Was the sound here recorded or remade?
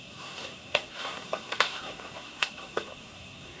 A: remade